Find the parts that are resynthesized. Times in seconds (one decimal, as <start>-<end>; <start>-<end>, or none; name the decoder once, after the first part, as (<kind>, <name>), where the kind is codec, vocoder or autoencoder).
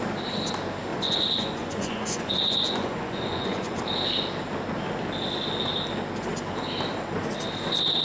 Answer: 0.9-3.8 (vocoder, Vocos)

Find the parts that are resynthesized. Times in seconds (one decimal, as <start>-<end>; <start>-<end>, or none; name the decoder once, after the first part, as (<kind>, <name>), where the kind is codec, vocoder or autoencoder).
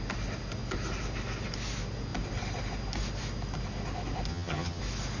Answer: 4.3-4.8 (vocoder, HiFi-GAN)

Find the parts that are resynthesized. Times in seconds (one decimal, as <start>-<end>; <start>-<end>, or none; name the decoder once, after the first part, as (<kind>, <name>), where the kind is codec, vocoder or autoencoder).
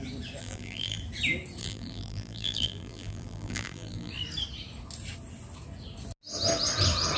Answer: 0.4-1.0 (vocoder, BigVGAN v2); 1.6-4.1